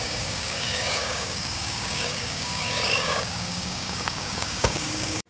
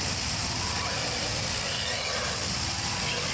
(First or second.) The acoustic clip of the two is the second